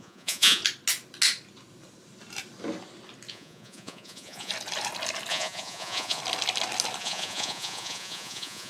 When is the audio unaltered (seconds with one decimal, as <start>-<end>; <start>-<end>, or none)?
0.6-3.3; 4.5-5.3; 6.2-7.0